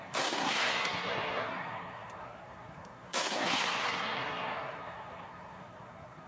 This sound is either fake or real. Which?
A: fake